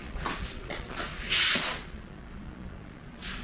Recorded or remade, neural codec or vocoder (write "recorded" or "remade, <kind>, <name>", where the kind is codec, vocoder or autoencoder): remade, vocoder, Vocos